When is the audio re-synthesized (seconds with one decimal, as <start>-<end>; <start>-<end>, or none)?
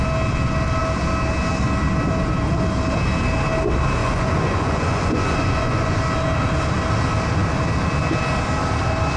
4.0-6.0